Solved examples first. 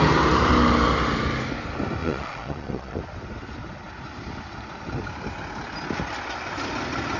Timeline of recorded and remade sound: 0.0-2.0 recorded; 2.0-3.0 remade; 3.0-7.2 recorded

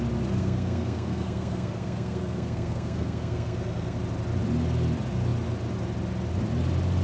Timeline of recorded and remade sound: 0.0-0.4 recorded; 0.4-4.0 remade; 4.0-7.0 recorded

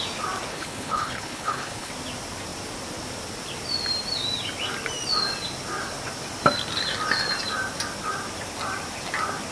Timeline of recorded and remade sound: 0.0-0.5 recorded; 0.5-1.9 remade; 1.9-9.5 recorded

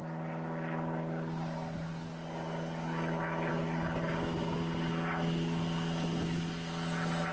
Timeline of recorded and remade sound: 0.0-7.3 recorded

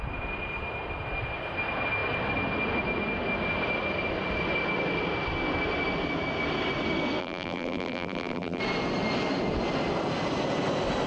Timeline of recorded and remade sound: 0.0-7.2 recorded; 7.2-8.6 remade; 8.6-11.1 recorded